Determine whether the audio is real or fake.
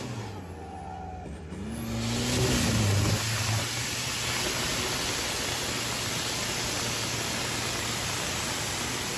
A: real